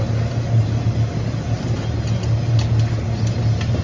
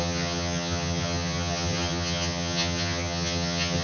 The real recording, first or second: first